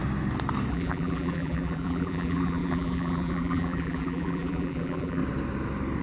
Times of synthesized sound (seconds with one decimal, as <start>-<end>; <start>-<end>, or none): 0.7-5.2